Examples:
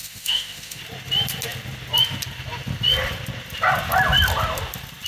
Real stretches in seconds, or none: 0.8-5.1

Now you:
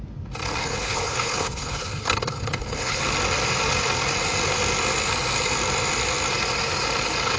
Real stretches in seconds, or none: 0.0-0.6; 3.0-7.4

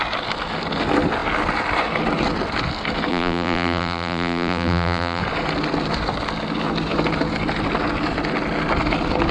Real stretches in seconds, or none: 0.0-3.1; 5.2-9.3

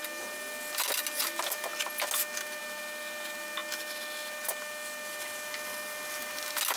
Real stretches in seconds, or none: 0.0-6.8

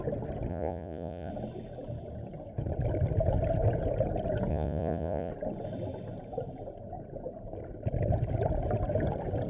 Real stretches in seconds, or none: 0.0-0.5; 1.3-4.5; 5.3-9.5

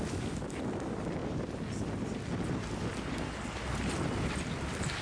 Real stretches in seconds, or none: 0.0-5.0

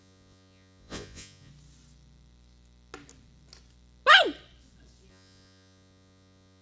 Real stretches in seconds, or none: 1.5-5.1